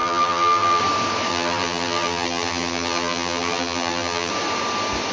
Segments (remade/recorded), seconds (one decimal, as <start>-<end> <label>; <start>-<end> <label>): 0.0-0.8 remade; 0.8-1.3 recorded; 1.3-4.3 remade; 4.3-5.1 recorded